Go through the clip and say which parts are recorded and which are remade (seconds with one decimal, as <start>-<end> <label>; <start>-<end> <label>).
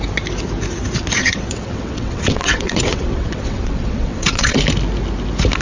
0.0-1.2 recorded; 1.2-4.6 remade; 4.6-5.6 recorded